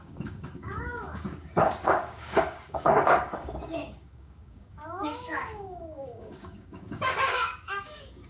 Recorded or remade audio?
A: remade